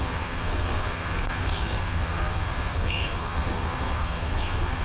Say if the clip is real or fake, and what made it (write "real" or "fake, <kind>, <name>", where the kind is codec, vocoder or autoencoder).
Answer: fake, codec, SNAC